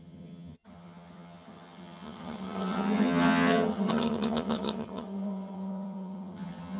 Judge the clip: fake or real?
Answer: fake